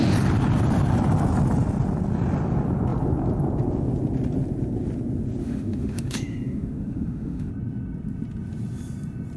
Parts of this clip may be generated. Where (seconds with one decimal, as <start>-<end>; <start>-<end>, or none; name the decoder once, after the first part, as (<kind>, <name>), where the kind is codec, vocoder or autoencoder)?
5.4-7.5 (autoencoder, DAC-VAE)